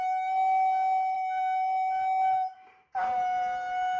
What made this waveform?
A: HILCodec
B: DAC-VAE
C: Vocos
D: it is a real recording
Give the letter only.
D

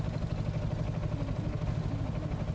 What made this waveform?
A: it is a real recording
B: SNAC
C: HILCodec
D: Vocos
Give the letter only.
A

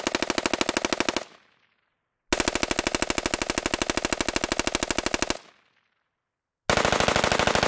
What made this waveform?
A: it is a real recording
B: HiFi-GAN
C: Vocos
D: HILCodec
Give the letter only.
A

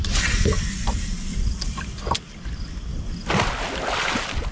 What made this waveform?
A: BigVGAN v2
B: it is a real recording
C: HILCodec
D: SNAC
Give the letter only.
B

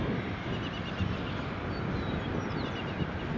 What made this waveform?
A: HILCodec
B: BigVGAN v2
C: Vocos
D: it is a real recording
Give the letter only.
D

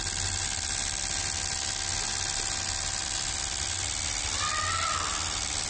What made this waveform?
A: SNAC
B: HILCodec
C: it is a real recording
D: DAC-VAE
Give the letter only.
C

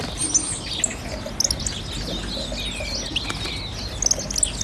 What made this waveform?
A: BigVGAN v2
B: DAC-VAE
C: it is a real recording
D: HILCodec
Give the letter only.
C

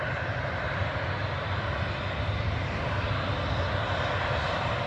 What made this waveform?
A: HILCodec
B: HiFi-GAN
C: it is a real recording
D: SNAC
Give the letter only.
C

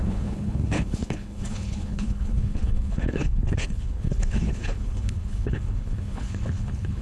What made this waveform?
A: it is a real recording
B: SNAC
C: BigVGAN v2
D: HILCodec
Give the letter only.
D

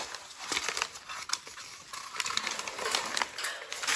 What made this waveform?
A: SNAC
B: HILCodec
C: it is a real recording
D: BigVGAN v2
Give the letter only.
C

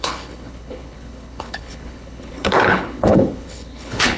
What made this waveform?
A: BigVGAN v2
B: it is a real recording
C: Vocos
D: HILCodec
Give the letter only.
D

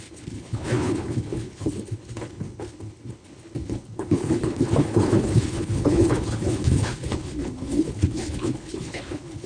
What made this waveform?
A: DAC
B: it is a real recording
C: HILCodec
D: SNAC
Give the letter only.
C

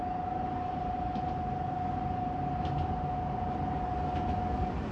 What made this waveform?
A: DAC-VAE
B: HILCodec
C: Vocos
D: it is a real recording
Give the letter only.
D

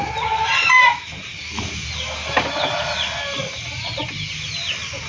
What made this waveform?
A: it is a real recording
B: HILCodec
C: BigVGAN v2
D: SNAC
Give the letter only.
A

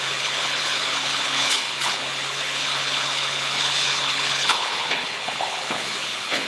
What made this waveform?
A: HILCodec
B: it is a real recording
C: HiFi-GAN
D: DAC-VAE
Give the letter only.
A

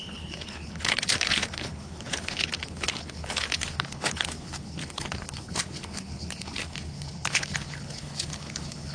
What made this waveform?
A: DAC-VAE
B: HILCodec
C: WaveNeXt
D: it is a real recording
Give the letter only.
B